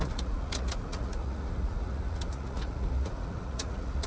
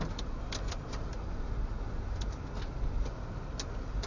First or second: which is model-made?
first